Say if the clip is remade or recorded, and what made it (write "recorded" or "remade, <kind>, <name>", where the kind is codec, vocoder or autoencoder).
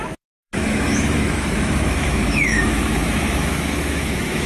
remade, autoencoder, DAC-VAE